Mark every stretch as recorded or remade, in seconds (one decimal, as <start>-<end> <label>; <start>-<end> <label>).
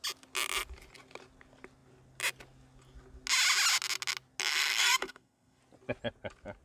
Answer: 0.0-4.5 recorded; 4.5-5.6 remade; 5.6-6.6 recorded